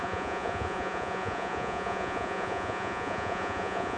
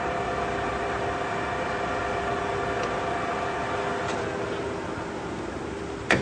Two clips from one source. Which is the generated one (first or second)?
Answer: first